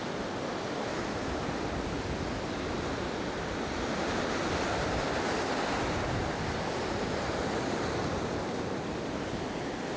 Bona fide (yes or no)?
yes